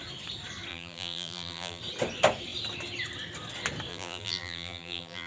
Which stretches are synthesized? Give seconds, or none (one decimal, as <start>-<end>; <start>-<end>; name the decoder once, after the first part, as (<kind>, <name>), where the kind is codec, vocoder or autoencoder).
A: 0.7-1.8 (vocoder, BigVGAN v2); 3.9-5.3